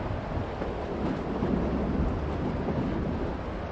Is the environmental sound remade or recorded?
recorded